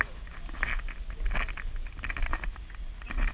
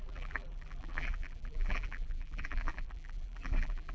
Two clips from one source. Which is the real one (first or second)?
first